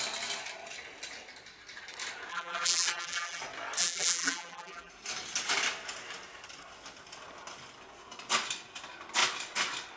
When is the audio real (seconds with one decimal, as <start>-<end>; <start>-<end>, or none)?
0.0-2.3; 3.4-3.8; 4.9-10.0